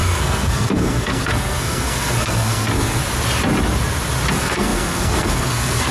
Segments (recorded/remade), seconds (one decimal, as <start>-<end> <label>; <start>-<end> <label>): 0.0-3.0 remade; 3.0-4.3 recorded; 4.3-5.9 remade